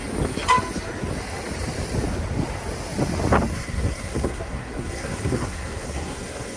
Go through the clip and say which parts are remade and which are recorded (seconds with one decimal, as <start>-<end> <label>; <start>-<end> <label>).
0.0-3.5 recorded; 3.5-6.6 remade